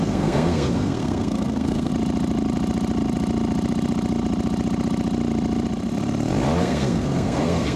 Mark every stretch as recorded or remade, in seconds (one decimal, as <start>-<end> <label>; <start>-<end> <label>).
0.0-1.9 remade; 1.9-6.6 recorded; 6.6-7.8 remade